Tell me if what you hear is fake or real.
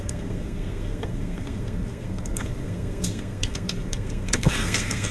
fake